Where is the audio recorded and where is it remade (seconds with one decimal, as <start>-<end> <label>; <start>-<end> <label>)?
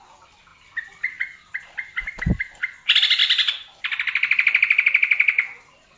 0.0-0.5 recorded; 0.5-2.6 remade; 2.6-3.2 recorded; 3.2-3.8 remade; 3.8-6.0 recorded